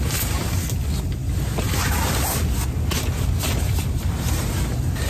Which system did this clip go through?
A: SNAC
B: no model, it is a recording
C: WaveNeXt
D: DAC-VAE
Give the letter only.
B